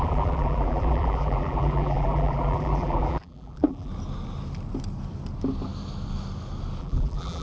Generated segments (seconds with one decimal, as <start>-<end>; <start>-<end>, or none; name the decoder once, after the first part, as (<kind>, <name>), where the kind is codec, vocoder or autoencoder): 0.0-3.9 (vocoder, BigVGAN v2); 6.8-7.4